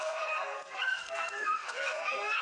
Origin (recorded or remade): remade